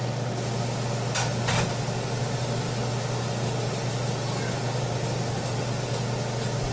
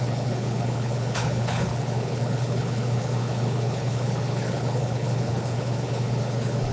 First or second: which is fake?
second